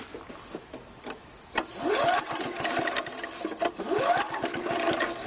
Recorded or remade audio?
recorded